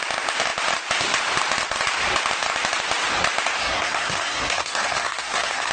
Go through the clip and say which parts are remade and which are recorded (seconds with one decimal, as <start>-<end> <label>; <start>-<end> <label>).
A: 0.0-3.6 recorded; 3.6-5.7 remade